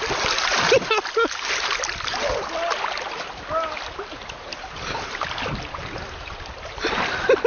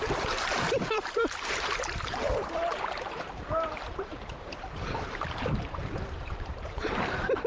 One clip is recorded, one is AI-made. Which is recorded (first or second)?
first